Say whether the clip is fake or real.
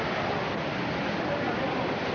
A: real